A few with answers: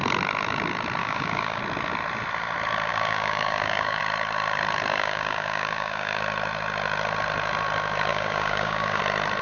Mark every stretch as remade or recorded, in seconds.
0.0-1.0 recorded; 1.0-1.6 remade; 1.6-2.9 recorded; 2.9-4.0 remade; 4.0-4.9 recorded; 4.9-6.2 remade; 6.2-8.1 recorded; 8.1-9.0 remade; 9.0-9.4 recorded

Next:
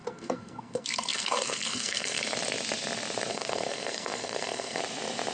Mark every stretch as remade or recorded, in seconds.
0.0-2.2 remade; 2.2-3.3 recorded; 3.3-4.8 remade; 4.8-5.3 recorded